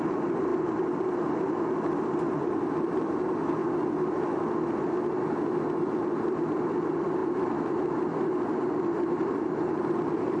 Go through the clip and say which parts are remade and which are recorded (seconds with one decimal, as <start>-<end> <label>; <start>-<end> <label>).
0.0-3.6 remade; 3.6-6.2 recorded; 6.2-7.2 remade; 7.2-8.8 recorded; 8.8-10.4 remade